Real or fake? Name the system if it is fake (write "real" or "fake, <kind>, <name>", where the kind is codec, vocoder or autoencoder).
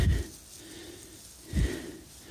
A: real